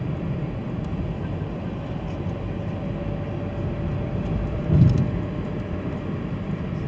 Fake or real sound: real